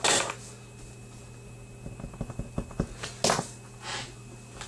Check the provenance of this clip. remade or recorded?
recorded